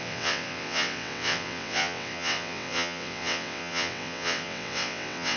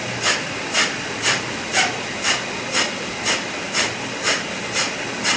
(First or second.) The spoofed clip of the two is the first